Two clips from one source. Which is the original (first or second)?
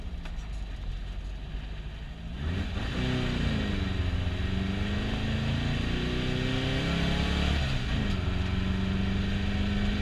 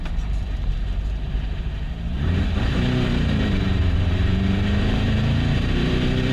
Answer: first